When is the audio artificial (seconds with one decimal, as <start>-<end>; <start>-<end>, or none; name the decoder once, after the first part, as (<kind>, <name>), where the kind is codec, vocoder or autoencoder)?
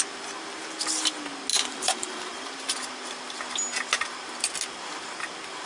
1.5-2.5 (vocoder, BigVGAN v2)